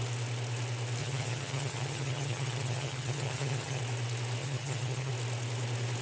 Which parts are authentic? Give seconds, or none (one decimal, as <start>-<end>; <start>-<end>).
0.0-1.0; 3.8-4.4; 5.1-6.0